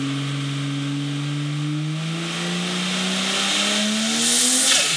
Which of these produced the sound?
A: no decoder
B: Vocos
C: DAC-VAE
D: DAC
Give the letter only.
A